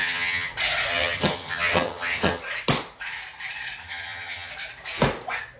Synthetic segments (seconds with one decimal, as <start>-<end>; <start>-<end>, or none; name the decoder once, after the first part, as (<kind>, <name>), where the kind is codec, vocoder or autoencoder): 0.0-0.5 (vocoder, HiFi-GAN); 0.9-2.4; 3.8-4.5